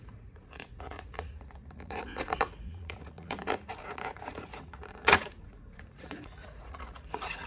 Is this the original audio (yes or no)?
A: no